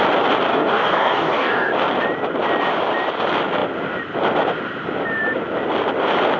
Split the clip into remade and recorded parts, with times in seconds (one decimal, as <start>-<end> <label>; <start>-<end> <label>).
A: 0.0-0.5 recorded; 0.5-1.7 remade; 1.7-6.4 recorded